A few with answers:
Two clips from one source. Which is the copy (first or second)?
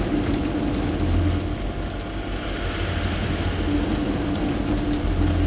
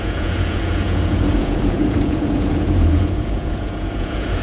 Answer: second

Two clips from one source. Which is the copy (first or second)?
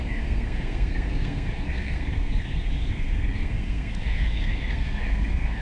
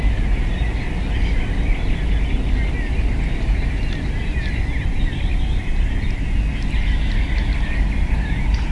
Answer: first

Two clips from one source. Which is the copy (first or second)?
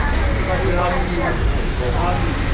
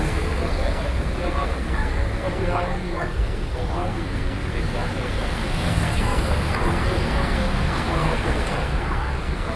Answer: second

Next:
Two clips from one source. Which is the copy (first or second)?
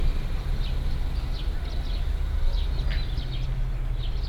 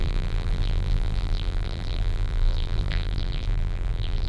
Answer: second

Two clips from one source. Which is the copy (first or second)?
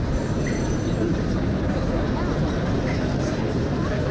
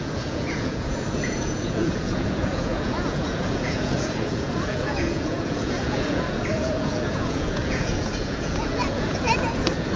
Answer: second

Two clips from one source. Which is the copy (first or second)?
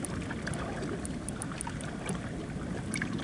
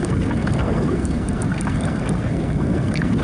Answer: second